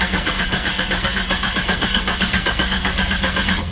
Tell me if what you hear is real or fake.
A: fake